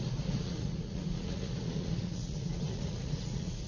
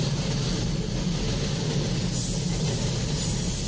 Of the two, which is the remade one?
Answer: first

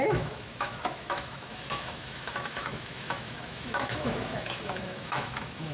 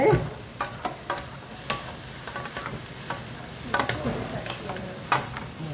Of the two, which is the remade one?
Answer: first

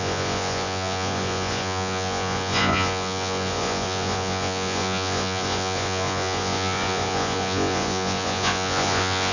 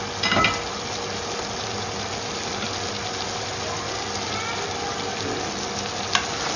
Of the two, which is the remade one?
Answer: first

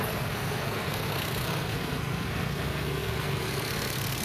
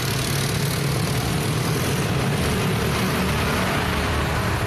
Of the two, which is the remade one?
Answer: first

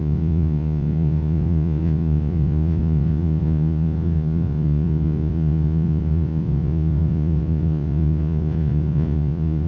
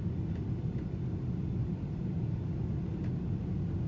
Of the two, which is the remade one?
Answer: first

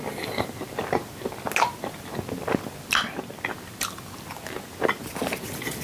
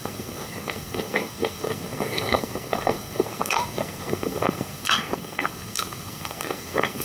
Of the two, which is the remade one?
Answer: second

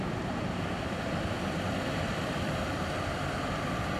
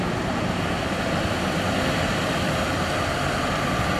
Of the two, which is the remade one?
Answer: first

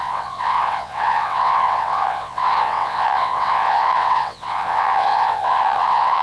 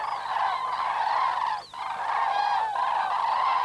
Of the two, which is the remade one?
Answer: first